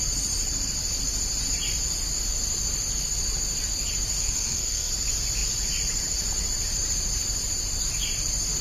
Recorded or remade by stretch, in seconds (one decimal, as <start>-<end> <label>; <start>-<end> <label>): 0.0-4.2 recorded; 4.2-4.9 remade; 4.9-8.6 recorded